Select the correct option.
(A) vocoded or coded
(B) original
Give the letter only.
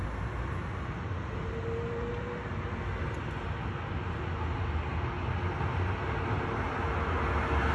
B